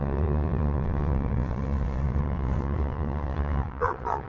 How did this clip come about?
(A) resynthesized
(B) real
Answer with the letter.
A